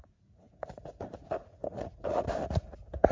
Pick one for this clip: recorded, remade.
remade